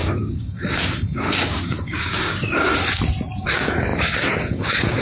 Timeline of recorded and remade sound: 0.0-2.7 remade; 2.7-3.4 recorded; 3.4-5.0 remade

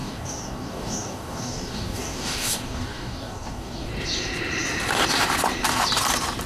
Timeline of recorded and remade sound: 0.0-3.9 remade; 3.9-6.5 recorded

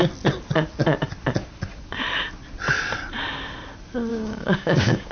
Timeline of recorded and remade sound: 0.0-4.1 recorded; 4.1-5.1 remade

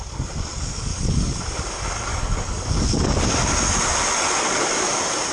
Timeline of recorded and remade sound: 0.0-0.9 recorded; 0.9-1.4 remade; 1.4-2.1 recorded; 2.1-2.7 remade; 2.7-5.3 recorded

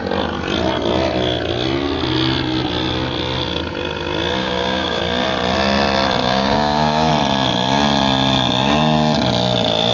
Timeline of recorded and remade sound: 0.0-4.4 recorded; 4.4-5.0 remade; 5.0-6.2 recorded; 6.2-7.1 remade; 7.1-9.9 recorded

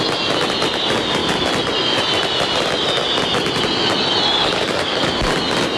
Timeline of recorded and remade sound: 0.0-4.4 recorded; 4.4-5.1 remade; 5.1-5.8 recorded

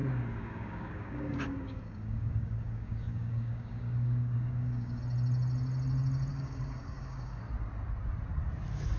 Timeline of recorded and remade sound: 0.0-5.0 remade; 5.0-6.3 recorded; 6.3-7.4 remade; 7.4-9.0 recorded

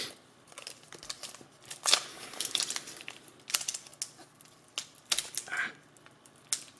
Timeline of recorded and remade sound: 0.0-2.1 recorded; 2.1-2.6 remade; 2.6-6.8 recorded